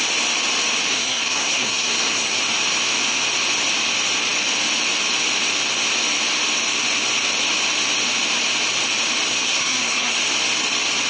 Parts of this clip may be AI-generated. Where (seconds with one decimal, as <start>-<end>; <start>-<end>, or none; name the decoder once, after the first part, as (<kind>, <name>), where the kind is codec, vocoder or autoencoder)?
0.9-2.4 (codec, SNAC); 9.3-10.2